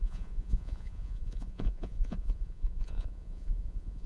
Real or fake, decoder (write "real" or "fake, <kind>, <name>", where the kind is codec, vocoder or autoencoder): fake, vocoder, Vocos